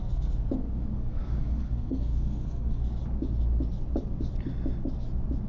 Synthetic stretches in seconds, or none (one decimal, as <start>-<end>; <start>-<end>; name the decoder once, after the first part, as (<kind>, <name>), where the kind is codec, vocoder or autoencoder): 0.0-3.0 (codec, SNAC)